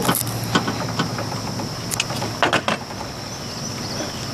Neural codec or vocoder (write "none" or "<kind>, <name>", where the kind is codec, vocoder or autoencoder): none